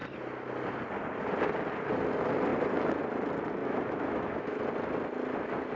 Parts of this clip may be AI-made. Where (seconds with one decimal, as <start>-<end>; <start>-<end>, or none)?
3.6-4.6